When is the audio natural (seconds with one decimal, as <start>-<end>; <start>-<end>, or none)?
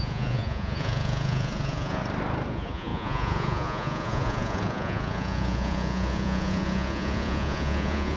2.0-2.5